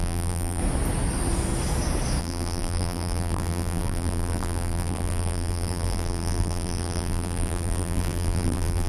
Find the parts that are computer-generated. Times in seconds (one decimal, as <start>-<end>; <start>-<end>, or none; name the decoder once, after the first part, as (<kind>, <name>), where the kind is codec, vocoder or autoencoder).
0.0-0.6 (vocoder, BigVGAN v2); 2.2-8.9